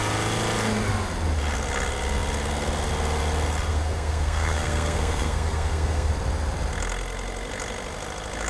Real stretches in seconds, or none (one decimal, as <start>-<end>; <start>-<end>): 0.0-3.7; 6.1-8.5